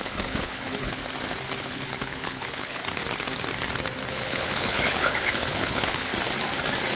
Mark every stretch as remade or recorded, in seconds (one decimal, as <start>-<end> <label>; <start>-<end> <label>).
0.0-1.0 remade; 1.0-1.6 recorded; 1.6-2.8 remade; 2.8-4.1 recorded; 4.1-6.1 remade; 6.1-7.0 recorded